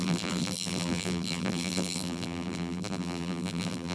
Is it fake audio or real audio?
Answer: fake